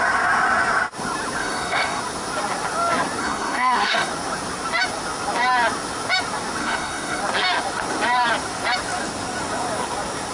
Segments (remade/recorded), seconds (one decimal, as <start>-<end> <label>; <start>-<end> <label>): 0.0-1.4 recorded; 1.4-2.0 remade; 2.0-3.2 recorded; 3.2-4.1 remade; 4.1-6.6 recorded; 6.6-7.2 remade; 7.2-10.3 recorded

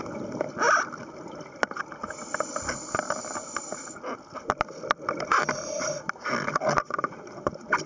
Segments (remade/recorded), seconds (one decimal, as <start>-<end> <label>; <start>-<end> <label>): 0.0-7.9 recorded

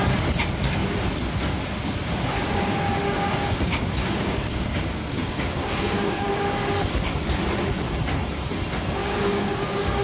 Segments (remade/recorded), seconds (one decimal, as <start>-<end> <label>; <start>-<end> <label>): 0.0-2.0 recorded; 2.0-6.3 remade; 6.3-9.0 recorded; 9.0-10.0 remade

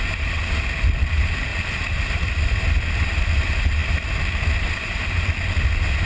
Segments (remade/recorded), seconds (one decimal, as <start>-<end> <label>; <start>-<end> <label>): 0.0-1.5 recorded; 1.5-2.6 remade; 2.6-6.1 recorded